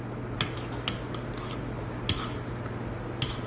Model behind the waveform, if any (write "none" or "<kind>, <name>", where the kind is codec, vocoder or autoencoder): none